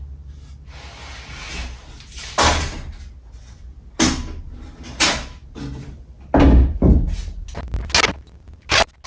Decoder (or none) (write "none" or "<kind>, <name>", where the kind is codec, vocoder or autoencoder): none